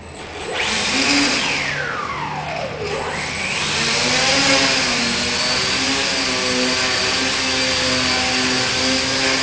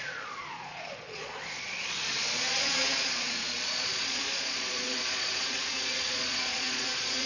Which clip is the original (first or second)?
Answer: first